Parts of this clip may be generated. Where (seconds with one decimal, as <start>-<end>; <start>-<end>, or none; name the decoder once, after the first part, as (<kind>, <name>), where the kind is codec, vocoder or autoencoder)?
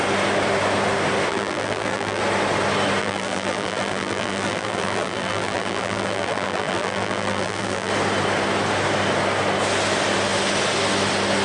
1.3-2.2 (vocoder, BigVGAN v2); 3.0-7.9